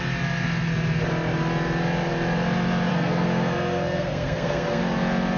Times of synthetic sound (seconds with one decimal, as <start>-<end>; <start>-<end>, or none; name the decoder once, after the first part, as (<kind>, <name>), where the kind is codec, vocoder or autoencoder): 2.9-4.8 (codec, SNAC)